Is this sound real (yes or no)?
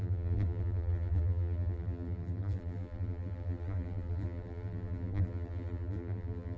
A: no